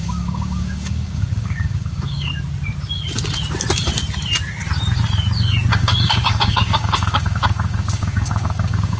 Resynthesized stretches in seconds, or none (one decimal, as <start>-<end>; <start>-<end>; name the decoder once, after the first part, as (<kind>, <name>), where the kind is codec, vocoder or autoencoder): 0.0-2.3 (codec, DAC); 5.7-9.0

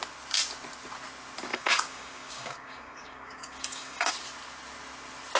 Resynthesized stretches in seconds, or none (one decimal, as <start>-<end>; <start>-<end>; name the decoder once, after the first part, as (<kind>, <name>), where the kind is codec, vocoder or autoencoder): 1.5-4.1 (codec, DAC)